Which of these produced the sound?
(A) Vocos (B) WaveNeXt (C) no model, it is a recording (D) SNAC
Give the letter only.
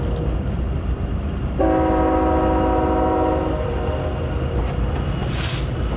C